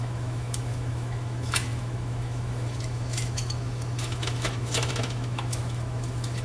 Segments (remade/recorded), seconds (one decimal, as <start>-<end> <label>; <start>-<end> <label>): 0.0-6.4 remade